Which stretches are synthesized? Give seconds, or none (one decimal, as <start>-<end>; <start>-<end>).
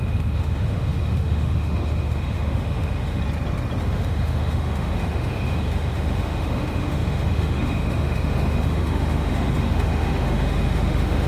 0.0-3.2; 3.8-11.3